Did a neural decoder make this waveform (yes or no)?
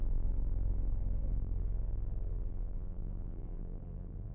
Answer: yes